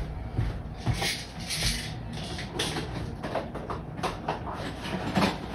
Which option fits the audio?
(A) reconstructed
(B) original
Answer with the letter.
B